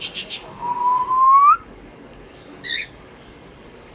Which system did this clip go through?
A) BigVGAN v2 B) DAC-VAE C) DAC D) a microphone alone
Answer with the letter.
C